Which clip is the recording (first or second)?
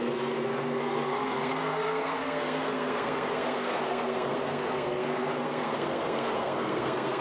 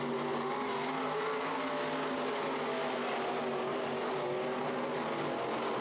second